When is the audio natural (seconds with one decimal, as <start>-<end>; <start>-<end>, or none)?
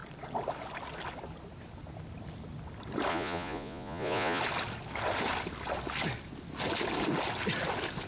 0.0-3.1; 4.4-8.1